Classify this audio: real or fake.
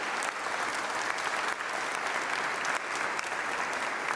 real